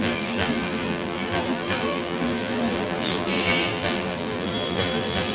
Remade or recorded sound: remade